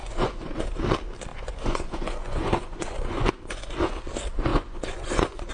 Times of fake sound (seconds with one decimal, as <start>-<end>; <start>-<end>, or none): 0.0-0.6; 1.3-4.1; 4.5-5.5